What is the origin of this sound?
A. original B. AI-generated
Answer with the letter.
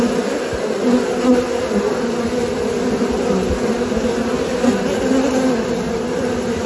A